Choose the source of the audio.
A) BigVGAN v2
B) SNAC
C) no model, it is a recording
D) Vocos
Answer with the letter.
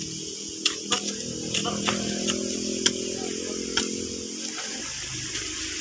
C